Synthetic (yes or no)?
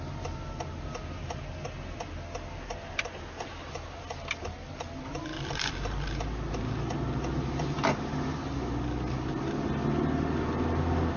no